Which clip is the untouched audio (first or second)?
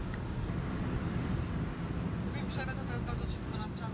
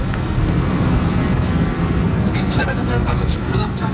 first